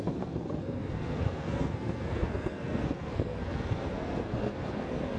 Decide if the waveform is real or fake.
fake